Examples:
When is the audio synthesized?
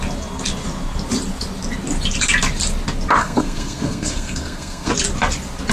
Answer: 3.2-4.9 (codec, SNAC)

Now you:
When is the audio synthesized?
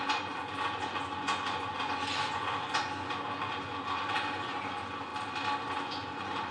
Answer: 0.0-5.1 (vocoder, Vocos); 5.7-6.5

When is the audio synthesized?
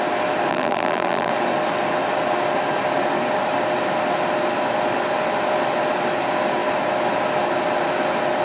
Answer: 0.5-1.3 (vocoder, BigVGAN v2)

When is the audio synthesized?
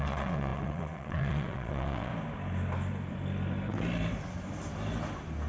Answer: 0.0-2.1 (vocoder, WaveNeXt)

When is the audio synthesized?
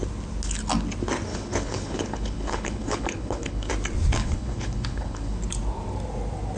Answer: 1.3-3.7 (codec, HILCodec); 4.2-5.4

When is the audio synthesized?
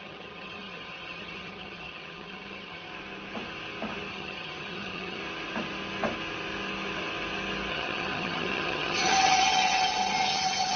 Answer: 0.0-2.9 (vocoder, HiFi-GAN); 4.1-5.2; 7.7-10.8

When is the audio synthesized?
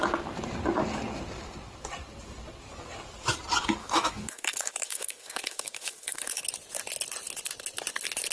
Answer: 3.8-6.4 (autoencoder, DAC-VAE)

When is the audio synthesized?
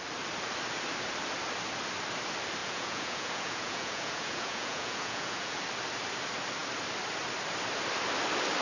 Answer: 2.6-5.6 (vocoder, Vocos)